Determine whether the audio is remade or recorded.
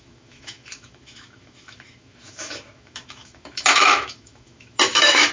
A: remade